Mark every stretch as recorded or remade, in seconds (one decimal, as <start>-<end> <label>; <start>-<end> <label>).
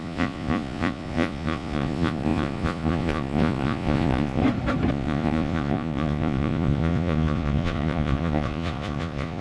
0.0-4.4 remade; 4.4-4.9 recorded; 4.9-9.4 remade